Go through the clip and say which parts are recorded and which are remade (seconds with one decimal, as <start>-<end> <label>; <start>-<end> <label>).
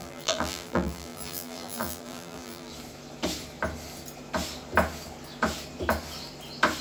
0.0-2.7 remade; 2.7-6.8 recorded